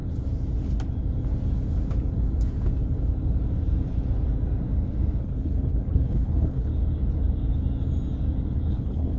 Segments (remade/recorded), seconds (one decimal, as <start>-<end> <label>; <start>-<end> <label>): 0.0-5.2 recorded; 5.2-6.7 remade; 6.7-8.7 recorded; 8.7-9.2 remade